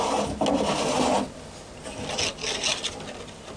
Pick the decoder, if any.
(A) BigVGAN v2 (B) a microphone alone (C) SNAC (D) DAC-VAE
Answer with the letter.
B